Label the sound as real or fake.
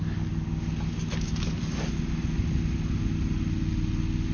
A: real